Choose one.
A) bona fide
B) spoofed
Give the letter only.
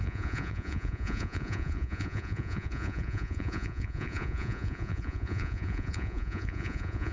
B